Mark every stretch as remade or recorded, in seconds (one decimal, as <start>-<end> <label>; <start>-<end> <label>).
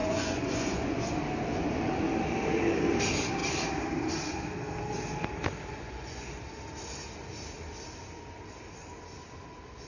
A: 0.0-1.1 remade; 1.1-5.7 recorded; 5.7-6.4 remade; 6.4-9.9 recorded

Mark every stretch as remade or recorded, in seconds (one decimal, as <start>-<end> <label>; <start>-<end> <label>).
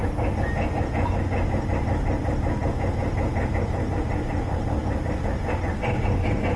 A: 0.0-6.6 recorded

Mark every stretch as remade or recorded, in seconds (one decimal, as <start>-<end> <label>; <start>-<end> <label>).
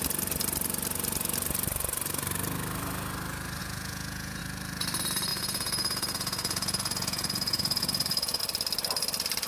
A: 0.0-3.6 recorded; 3.6-4.4 remade; 4.4-5.3 recorded; 5.3-8.4 remade; 8.4-9.5 recorded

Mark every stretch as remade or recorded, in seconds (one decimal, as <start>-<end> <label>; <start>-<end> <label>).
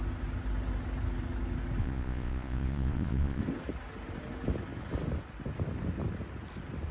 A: 0.0-1.8 recorded; 1.8-3.4 remade; 3.4-6.9 recorded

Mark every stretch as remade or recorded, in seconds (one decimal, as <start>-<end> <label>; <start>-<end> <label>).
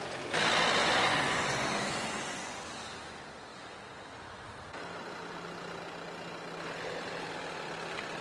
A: 0.0-0.8 recorded; 0.8-2.6 remade; 2.6-8.2 recorded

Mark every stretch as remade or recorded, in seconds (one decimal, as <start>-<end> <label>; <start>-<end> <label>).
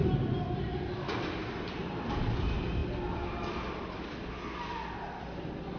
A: 0.0-5.8 recorded